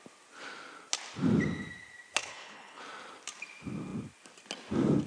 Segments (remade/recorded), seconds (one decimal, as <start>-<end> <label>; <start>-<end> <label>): 0.0-2.2 recorded; 2.2-2.8 remade; 2.8-5.1 recorded